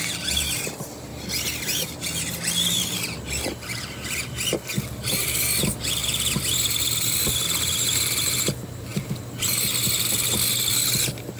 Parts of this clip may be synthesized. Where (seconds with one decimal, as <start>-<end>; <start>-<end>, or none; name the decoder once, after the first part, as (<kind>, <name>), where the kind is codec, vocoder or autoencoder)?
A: none